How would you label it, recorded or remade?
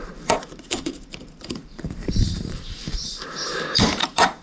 remade